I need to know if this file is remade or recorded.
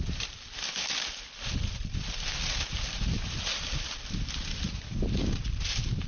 recorded